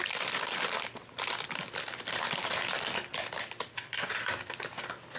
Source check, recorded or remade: recorded